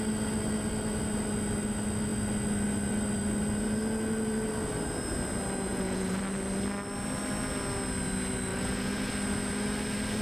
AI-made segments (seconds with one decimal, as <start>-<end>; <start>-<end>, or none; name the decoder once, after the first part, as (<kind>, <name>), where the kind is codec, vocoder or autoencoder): 5.7-6.2 (vocoder, Vocos); 8.5-9.1